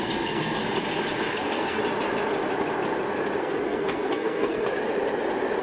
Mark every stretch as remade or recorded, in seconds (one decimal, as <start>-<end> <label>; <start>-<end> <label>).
0.0-0.6 remade; 0.6-1.3 recorded; 1.3-1.8 remade; 1.8-3.4 recorded; 3.4-4.7 remade; 4.7-5.6 recorded